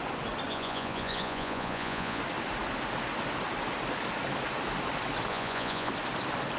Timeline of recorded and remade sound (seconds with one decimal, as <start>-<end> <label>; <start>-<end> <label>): 0.0-0.5 recorded; 0.5-2.2 remade; 2.2-5.3 recorded; 5.3-5.9 remade; 5.9-6.6 recorded